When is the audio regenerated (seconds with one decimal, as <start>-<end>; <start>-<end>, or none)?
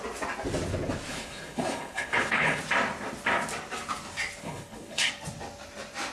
1.1-2.6; 4.4-5.1